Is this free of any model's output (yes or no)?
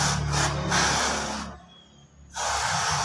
yes